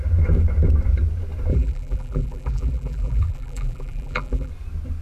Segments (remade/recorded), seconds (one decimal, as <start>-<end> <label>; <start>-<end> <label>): 0.0-1.5 recorded; 1.5-4.5 remade; 4.5-5.0 recorded